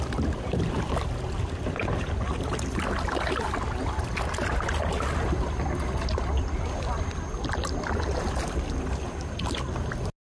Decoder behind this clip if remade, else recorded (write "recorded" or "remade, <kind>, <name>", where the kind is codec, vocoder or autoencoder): recorded